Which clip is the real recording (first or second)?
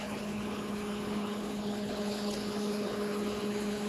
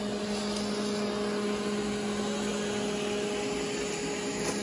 second